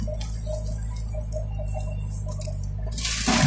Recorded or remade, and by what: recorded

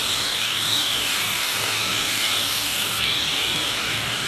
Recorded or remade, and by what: remade, codec, DAC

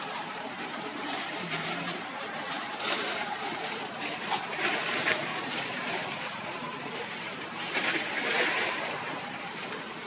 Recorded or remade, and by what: remade, vocoder, BigVGAN v2